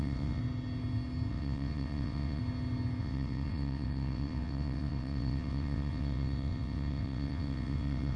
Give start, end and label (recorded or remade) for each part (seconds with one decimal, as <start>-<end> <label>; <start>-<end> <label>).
0.0-0.4 remade; 0.4-1.3 recorded; 1.3-2.4 remade; 2.4-3.0 recorded; 3.0-8.2 remade